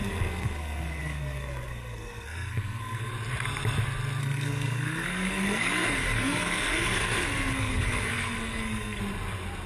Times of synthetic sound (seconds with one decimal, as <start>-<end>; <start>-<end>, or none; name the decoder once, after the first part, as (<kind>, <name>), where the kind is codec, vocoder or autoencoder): 0.0-3.1 (codec, SNAC); 4.2-9.0